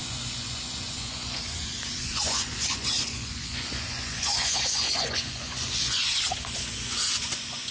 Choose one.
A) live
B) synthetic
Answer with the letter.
B